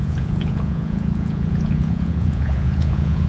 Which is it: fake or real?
fake